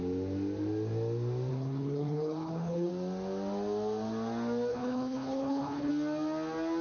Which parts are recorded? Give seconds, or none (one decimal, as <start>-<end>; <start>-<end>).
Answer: 0.0-1.5; 2.9-4.7; 5.9-6.8